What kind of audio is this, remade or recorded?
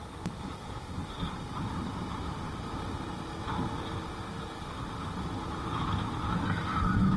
recorded